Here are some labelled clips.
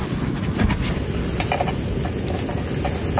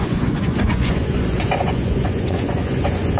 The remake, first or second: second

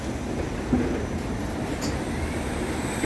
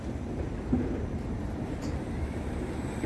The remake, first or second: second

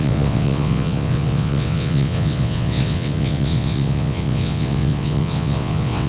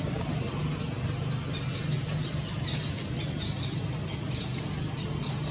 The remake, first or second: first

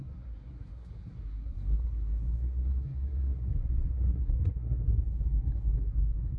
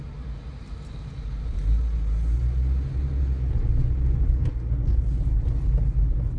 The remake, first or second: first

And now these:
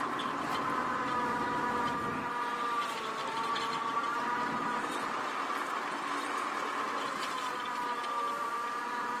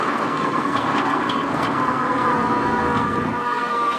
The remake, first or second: second